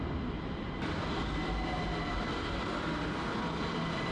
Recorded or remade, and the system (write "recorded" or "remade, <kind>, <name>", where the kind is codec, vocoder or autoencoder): recorded